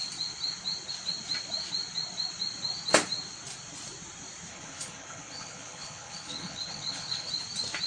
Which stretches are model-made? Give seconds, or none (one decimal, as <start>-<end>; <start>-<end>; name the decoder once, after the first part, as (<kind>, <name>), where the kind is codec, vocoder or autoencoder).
4.5-7.3 (codec, HILCodec)